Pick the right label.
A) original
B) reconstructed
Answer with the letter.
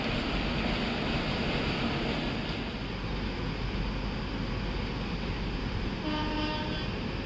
A